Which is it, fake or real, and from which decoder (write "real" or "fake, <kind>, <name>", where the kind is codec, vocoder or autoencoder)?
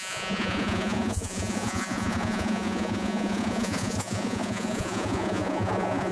fake, vocoder, Vocos